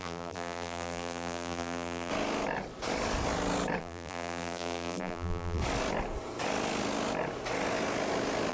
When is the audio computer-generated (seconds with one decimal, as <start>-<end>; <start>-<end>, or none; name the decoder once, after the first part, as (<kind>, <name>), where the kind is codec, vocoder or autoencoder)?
0.0-2.1 (vocoder, BigVGAN v2); 3.8-5.6